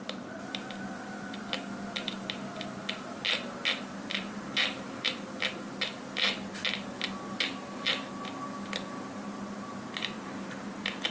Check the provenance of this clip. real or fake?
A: real